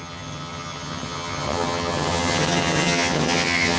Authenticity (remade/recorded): remade